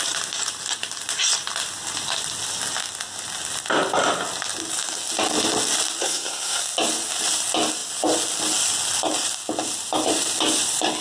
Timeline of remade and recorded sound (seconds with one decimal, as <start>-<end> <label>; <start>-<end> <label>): 0.0-6.0 recorded; 6.0-6.6 remade; 6.6-11.0 recorded